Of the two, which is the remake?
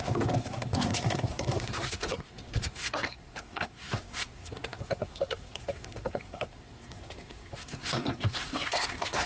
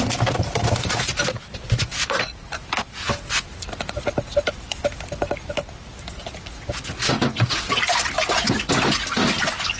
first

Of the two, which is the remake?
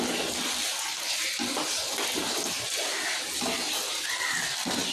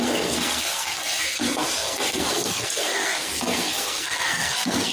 second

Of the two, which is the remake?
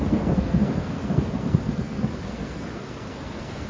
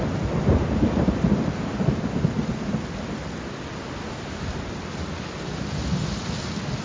first